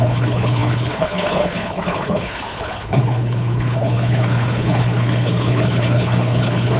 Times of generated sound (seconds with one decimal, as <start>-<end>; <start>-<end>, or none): 0.0-6.8